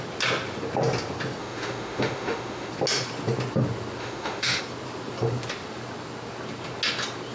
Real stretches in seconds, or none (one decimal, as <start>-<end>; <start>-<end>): 0.0-1.4; 2.7-4.0; 4.6-7.3